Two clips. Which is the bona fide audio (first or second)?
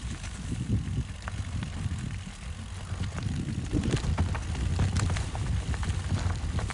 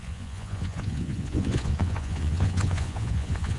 first